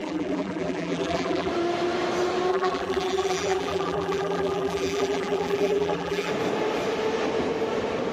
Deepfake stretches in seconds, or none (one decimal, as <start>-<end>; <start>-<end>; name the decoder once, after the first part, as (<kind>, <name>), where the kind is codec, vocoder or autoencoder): 0.0-1.5 (vocoder, BigVGAN v2); 2.5-6.3